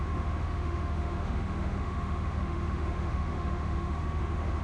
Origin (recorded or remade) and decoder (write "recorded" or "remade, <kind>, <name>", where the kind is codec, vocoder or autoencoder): remade, autoencoder, DAC-VAE